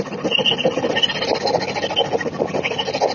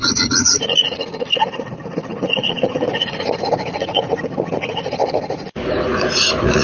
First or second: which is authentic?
first